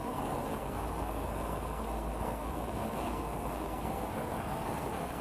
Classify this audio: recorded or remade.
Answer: remade